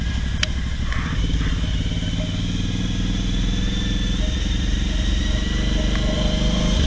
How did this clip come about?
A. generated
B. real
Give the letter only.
B